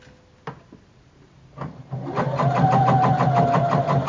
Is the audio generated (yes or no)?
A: no